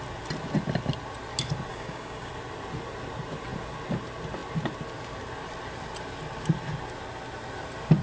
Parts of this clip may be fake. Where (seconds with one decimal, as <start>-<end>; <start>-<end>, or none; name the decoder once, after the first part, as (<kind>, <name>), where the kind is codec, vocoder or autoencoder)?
1.7-2.3 (codec, DAC)